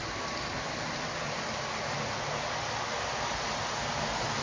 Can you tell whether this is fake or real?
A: real